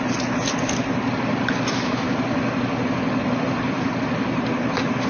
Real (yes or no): yes